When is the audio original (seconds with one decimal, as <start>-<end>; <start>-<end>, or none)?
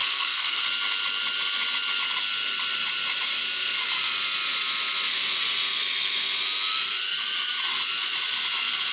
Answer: 0.6-8.9